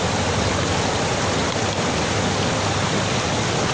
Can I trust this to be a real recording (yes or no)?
yes